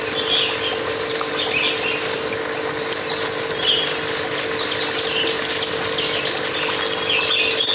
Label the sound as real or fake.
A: real